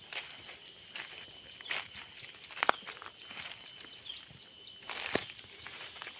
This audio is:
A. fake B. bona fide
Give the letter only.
B